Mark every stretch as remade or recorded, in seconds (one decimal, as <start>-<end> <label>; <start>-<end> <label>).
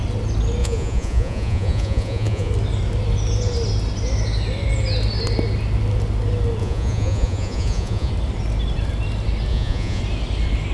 0.0-0.6 recorded; 0.6-2.5 remade; 2.5-6.6 recorded; 6.6-8.1 remade; 8.1-9.5 recorded; 9.5-10.0 remade; 10.0-10.7 recorded